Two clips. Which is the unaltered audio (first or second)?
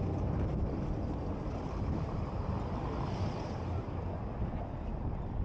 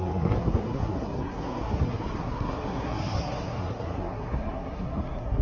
first